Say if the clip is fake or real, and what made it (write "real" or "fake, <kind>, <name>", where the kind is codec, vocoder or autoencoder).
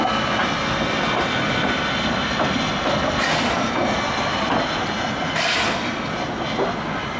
real